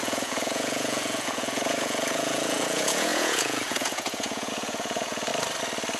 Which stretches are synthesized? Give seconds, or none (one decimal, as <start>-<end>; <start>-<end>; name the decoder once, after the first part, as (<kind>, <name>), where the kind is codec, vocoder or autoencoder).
0.0-5.3 (vocoder, Vocos)